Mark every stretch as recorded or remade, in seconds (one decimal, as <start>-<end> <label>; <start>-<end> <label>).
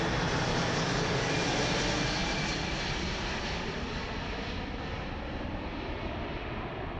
0.0-0.5 recorded; 0.5-1.3 remade; 1.3-7.0 recorded